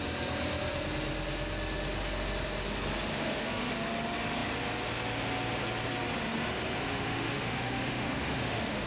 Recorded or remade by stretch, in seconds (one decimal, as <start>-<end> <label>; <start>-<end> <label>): 0.0-3.1 recorded; 3.1-3.7 remade; 3.7-6.8 recorded; 6.8-8.9 remade